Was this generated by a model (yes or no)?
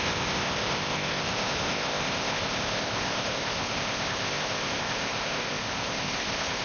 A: yes